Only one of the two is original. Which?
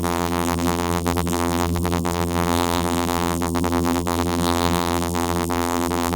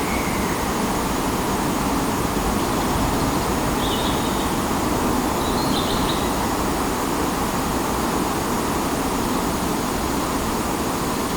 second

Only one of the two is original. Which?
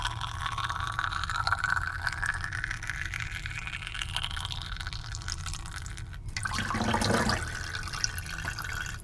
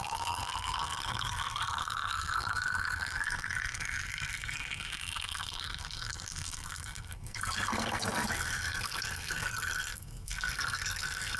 first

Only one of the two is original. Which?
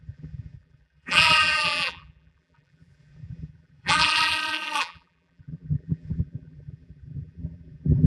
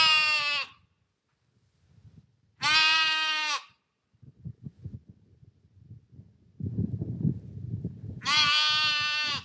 second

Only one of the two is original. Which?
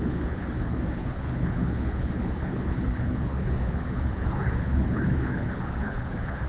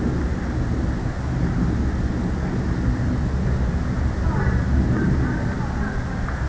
second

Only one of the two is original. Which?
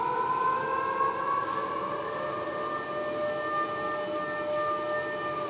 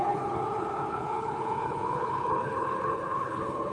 first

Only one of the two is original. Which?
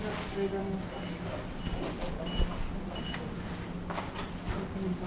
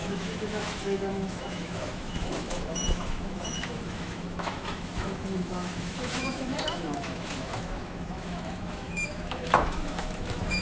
first